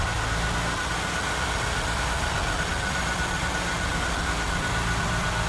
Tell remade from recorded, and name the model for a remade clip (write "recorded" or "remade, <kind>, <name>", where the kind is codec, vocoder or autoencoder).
recorded